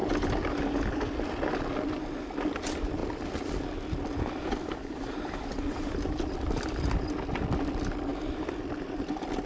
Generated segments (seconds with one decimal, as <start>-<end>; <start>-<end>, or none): 2.2-9.5